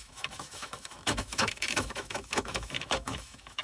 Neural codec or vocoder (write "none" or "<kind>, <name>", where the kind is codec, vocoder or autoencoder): autoencoder, DAC-VAE